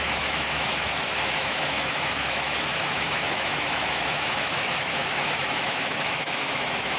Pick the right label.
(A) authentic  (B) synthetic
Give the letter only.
B